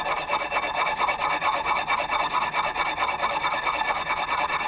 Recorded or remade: recorded